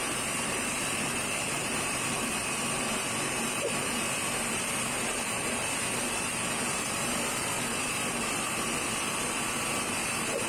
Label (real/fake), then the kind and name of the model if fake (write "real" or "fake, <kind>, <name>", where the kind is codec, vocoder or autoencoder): fake, vocoder, BigVGAN v2